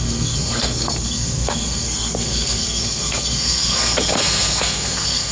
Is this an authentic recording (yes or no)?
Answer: no